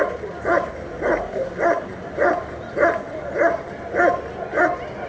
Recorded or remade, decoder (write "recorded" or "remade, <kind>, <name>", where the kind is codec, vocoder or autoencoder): recorded